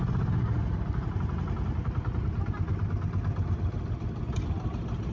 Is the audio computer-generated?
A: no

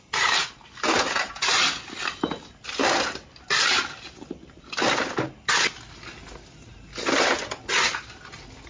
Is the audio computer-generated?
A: no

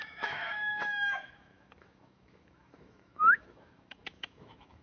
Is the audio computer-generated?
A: yes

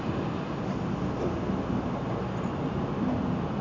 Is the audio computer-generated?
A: no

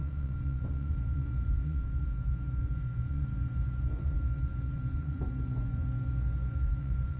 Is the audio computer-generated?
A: yes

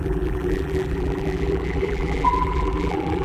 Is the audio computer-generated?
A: yes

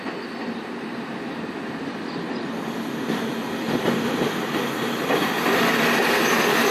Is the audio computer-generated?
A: no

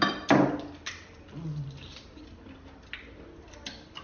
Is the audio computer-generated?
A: no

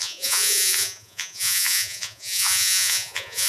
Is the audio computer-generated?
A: yes